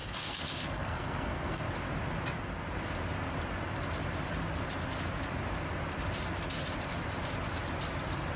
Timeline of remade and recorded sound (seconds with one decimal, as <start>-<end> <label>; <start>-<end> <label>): 0.0-1.6 remade; 1.6-8.4 recorded